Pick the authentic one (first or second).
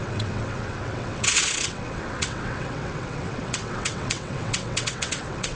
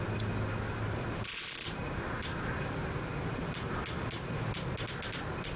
second